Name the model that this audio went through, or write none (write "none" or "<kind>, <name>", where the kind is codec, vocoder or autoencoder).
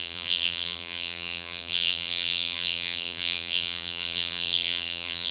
vocoder, BigVGAN v2